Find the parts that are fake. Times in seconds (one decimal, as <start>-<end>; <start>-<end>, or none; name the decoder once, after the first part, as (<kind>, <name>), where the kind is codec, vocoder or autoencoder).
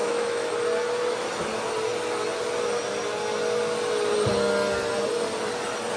0.0-0.5 (autoencoder, DAC-VAE)